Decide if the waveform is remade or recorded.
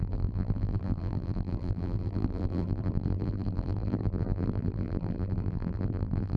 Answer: remade